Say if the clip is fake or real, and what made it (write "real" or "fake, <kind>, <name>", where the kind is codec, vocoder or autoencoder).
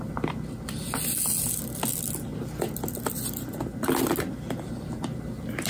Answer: real